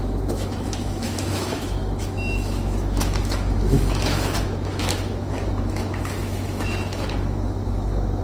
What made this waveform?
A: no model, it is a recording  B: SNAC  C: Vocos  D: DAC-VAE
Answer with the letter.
D